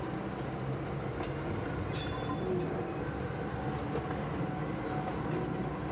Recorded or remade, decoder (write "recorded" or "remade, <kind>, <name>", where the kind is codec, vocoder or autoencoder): recorded